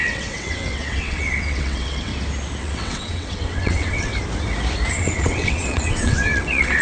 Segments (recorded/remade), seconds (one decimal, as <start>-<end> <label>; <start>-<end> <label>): 0.0-2.1 remade; 2.1-2.6 recorded; 2.6-4.1 remade; 4.1-4.9 recorded; 4.9-6.8 remade